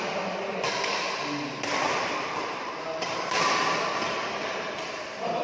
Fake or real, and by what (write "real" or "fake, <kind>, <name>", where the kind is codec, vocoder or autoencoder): fake, vocoder, BigVGAN v2